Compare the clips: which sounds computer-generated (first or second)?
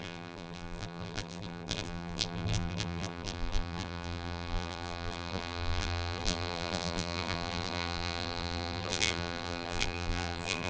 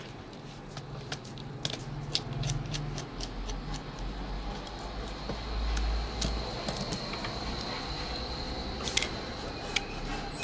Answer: first